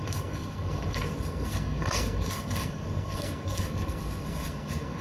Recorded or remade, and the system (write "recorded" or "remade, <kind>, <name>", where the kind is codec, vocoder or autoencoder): remade, codec, SNAC